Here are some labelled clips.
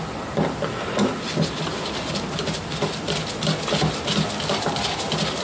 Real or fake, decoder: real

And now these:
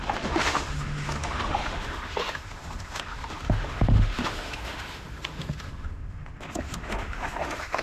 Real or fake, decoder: fake, autoencoder, DAC-VAE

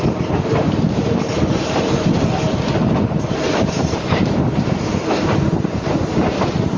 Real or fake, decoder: fake, vocoder, BigVGAN v2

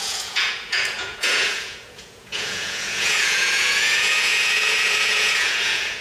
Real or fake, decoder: fake, vocoder, Vocos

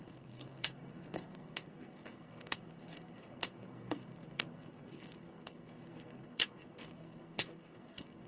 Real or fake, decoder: fake, codec, SNAC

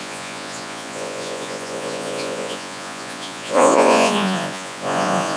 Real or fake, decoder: fake, vocoder, Vocos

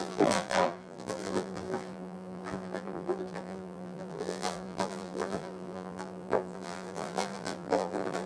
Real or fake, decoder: fake, vocoder, BigVGAN v2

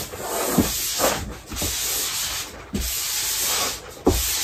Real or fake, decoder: real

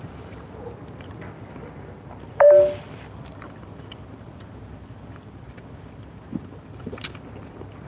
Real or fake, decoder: fake, vocoder, BigVGAN v2